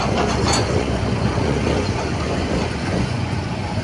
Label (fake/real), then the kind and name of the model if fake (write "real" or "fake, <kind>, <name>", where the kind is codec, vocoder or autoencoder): fake, vocoder, Vocos